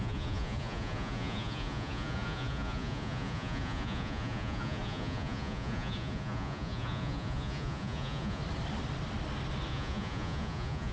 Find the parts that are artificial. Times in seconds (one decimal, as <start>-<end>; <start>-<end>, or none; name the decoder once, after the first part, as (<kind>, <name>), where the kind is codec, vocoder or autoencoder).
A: 0.0-8.4 (vocoder, Vocos); 9.7-10.9